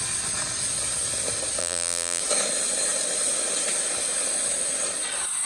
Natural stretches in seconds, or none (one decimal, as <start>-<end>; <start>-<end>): 0.0-1.6; 2.2-5.5